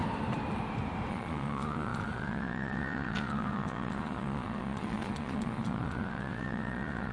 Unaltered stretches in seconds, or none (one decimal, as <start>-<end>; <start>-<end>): 0.0-1.1